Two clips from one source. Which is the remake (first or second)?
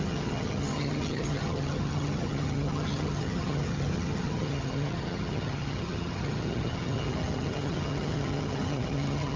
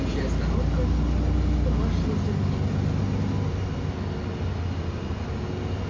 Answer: first